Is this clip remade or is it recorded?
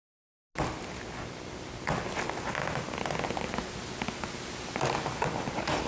recorded